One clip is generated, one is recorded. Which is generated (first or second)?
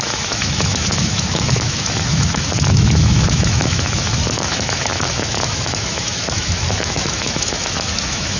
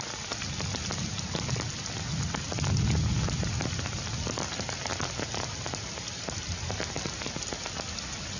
first